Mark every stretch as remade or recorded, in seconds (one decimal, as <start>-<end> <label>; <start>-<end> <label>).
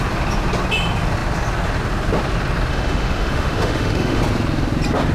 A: 0.0-2.7 recorded; 2.7-4.2 remade; 4.2-5.1 recorded